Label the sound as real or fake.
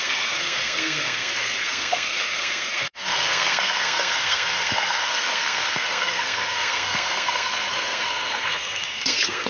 fake